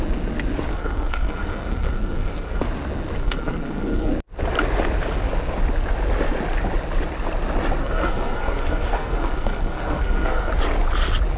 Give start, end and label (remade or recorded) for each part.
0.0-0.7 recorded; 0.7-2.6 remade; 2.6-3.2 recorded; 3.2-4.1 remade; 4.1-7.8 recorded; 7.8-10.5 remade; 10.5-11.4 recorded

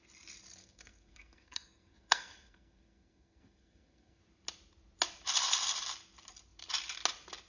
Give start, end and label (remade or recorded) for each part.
0.0-0.6 recorded; 0.6-4.2 remade; 4.2-7.5 recorded

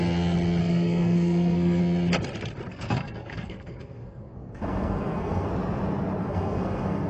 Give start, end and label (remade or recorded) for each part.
0.0-0.6 recorded; 0.6-1.8 remade; 1.8-2.7 recorded; 2.7-5.5 remade; 5.5-6.2 recorded; 6.2-7.1 remade

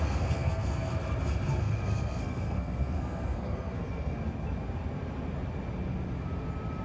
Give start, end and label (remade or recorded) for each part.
0.0-0.9 remade; 0.9-1.6 recorded; 1.6-4.2 remade; 4.2-6.8 recorded

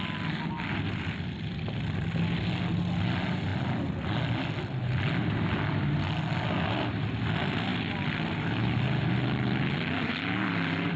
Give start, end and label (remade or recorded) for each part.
0.0-11.0 recorded

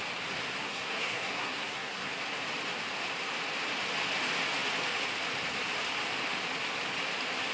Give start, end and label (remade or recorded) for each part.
0.0-0.6 recorded; 0.6-2.1 remade; 2.1-7.5 recorded